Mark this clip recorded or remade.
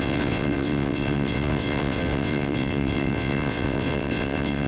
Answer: remade